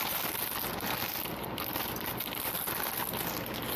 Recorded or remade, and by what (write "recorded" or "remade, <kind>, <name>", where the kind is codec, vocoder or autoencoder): recorded